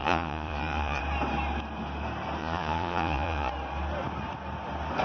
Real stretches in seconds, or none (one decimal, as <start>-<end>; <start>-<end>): 1.0-2.4; 3.5-5.0